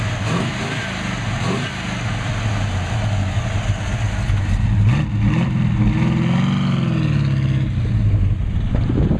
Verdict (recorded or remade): recorded